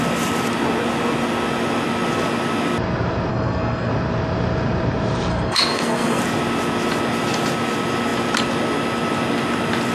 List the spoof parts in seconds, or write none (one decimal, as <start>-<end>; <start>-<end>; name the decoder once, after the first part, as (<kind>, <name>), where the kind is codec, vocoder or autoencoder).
3.3-3.9 (codec, SNAC); 5.3-6.2